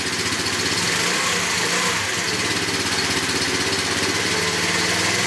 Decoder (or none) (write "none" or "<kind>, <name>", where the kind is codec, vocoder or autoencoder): none